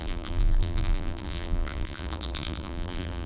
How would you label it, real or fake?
fake